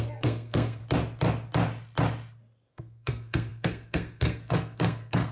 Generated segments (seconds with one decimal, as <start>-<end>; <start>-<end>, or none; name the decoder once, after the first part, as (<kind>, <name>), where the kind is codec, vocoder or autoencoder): 0.0-0.8 (codec, SNAC); 2.7-5.3